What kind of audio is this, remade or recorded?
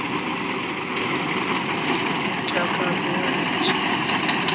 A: recorded